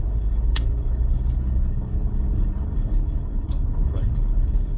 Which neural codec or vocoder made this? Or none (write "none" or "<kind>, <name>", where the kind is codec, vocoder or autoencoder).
codec, HILCodec